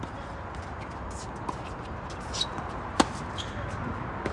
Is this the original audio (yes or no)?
yes